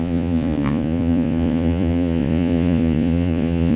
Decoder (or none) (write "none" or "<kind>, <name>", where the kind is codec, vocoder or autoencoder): vocoder, Vocos